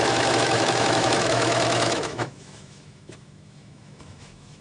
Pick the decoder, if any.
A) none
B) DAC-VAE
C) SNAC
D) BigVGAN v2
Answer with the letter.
B